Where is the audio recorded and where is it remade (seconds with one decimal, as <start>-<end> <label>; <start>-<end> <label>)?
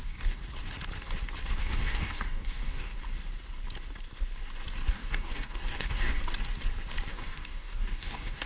0.0-0.4 remade; 0.4-1.6 recorded; 1.6-3.0 remade; 3.0-4.9 recorded; 4.9-6.2 remade; 6.2-7.1 recorded; 7.1-8.5 remade